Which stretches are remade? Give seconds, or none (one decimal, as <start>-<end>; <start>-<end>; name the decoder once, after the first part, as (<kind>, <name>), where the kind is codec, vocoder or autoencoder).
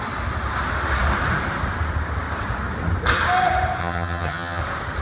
3.8-4.6 (vocoder, HiFi-GAN)